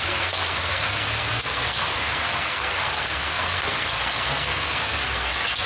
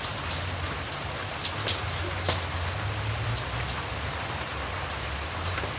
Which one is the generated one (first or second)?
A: first